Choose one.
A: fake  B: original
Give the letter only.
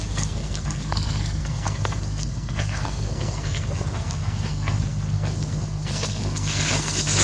A